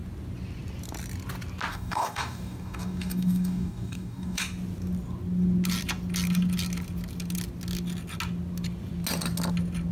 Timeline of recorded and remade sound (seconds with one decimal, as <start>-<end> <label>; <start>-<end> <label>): 0.0-1.7 recorded; 1.7-4.4 remade; 4.4-9.9 recorded